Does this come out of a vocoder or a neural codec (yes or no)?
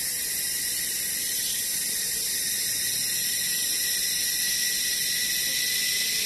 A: no